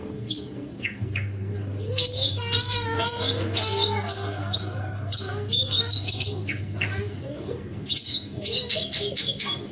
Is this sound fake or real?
fake